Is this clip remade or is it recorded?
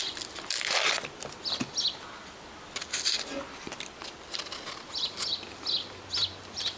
remade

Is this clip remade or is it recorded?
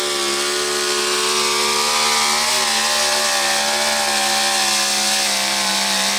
recorded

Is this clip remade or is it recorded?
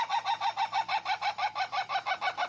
recorded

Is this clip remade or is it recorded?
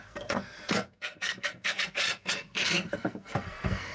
remade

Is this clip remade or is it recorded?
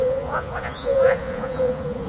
remade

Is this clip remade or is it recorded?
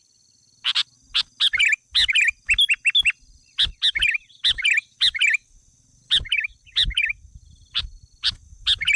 recorded